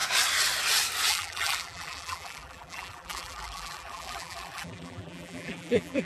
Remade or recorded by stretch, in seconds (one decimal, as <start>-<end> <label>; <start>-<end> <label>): 0.0-1.1 recorded; 1.1-6.1 remade